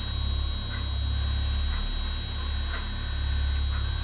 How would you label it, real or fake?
real